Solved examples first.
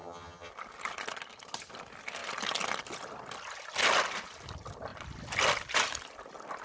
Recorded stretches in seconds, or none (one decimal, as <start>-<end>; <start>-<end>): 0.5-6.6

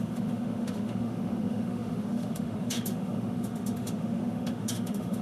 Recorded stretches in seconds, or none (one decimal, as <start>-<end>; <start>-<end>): none

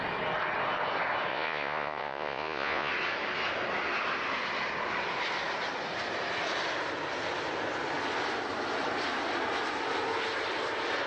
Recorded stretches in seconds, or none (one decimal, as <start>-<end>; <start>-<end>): 0.0-1.3; 2.9-11.1